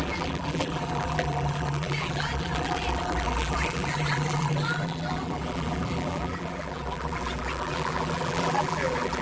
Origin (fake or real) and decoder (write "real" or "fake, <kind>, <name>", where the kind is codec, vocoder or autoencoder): fake, vocoder, BigVGAN v2